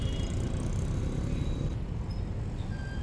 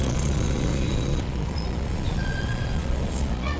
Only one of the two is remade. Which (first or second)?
second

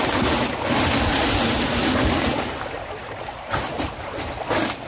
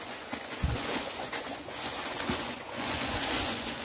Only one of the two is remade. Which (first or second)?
second